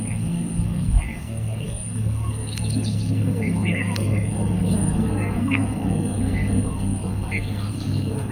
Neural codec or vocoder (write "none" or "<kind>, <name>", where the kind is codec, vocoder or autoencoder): codec, SNAC